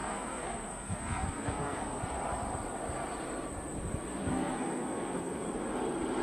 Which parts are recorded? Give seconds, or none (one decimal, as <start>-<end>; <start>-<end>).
2.0-4.2; 5.5-6.2